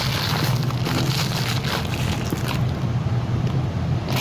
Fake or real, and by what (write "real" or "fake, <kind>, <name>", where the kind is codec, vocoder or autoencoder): real